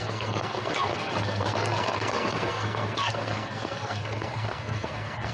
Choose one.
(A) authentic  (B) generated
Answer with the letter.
B